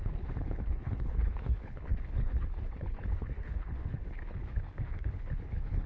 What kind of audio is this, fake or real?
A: fake